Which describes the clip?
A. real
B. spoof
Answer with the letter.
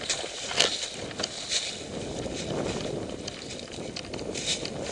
A